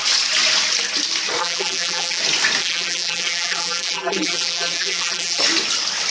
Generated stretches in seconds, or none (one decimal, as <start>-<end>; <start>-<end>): 1.4-2.2; 2.6-5.4